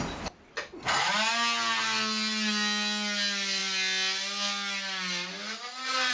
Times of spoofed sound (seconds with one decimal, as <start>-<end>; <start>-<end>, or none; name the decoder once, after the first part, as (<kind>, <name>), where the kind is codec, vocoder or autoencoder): none